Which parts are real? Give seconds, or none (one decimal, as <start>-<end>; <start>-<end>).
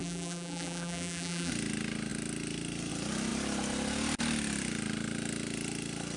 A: 1.5-6.2